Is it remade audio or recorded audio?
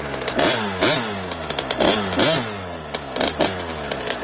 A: recorded